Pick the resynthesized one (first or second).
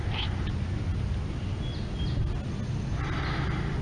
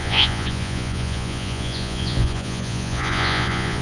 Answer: second